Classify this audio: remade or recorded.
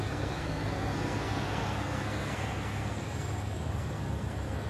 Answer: remade